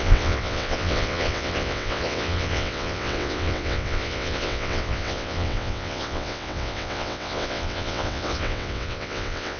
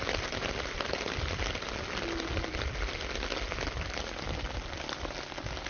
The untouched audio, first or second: second